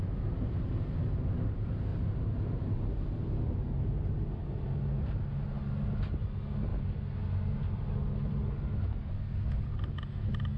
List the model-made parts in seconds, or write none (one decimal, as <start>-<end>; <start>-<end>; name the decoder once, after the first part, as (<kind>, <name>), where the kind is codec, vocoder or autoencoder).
1.9-4.8 (vocoder, BigVGAN v2)